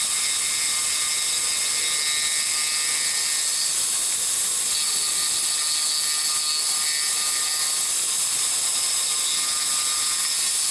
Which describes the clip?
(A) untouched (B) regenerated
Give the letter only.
A